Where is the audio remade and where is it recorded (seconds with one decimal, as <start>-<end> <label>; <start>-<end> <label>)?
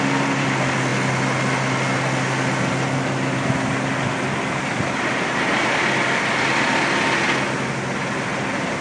0.0-8.8 recorded